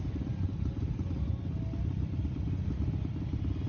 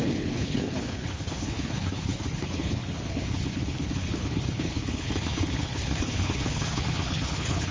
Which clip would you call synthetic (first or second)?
second